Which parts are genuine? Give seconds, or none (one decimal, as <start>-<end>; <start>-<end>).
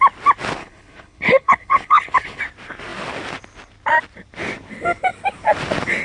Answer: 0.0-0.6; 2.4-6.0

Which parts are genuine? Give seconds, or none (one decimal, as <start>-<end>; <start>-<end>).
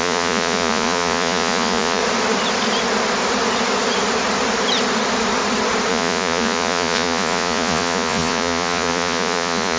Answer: 2.0-5.9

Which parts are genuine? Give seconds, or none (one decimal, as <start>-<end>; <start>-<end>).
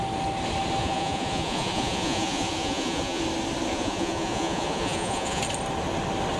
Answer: 0.0-0.8; 3.2-3.7; 5.4-6.4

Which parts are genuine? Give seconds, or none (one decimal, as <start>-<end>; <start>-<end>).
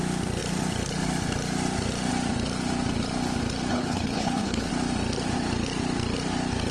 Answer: 0.0-3.7; 4.7-6.7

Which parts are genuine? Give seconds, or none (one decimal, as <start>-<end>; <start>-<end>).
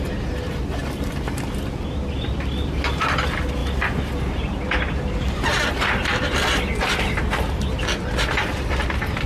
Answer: 0.0-9.3